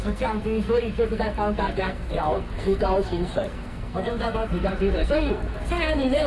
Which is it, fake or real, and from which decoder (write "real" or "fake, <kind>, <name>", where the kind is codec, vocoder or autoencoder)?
fake, codec, SNAC